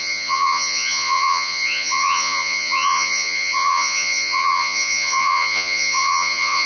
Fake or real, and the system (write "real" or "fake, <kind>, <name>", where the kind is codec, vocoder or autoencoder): fake, vocoder, Vocos